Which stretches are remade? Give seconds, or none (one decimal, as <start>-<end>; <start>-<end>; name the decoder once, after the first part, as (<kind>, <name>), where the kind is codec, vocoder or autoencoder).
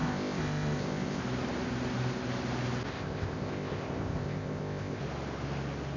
0.0-1.2 (codec, ZipCodec); 2.9-5.0